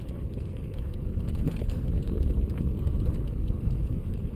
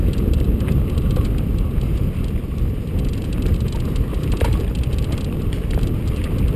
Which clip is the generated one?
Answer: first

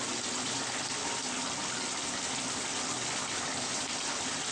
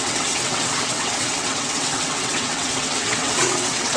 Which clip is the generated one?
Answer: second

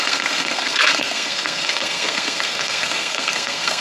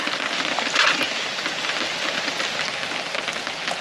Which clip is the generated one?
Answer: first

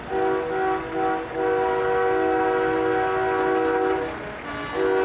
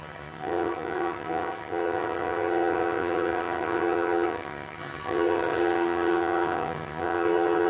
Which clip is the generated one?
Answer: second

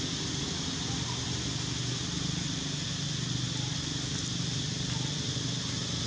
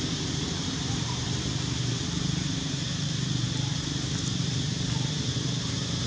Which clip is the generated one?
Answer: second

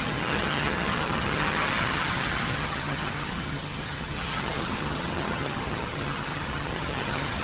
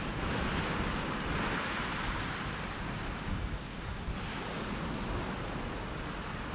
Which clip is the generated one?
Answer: first